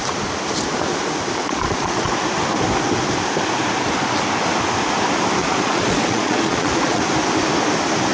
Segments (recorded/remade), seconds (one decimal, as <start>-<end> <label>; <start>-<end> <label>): 0.0-1.4 recorded; 1.4-2.1 remade; 2.1-5.4 recorded; 5.4-7.0 remade; 7.0-8.1 recorded